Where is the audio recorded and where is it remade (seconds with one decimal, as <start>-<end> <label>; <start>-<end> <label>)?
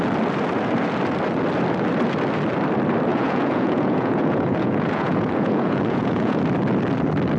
0.0-3.1 recorded; 3.1-6.4 remade; 6.4-7.4 recorded